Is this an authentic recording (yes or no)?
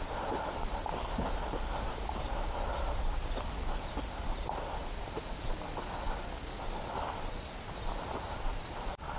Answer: yes